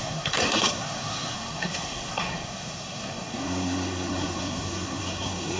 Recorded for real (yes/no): no